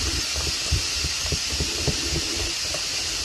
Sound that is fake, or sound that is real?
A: real